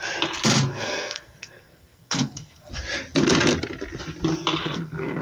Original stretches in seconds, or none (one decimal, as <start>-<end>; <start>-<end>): 0.0-0.7; 2.7-4.6